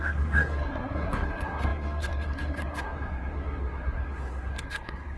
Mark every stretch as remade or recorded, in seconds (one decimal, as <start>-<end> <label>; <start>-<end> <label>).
0.0-5.2 remade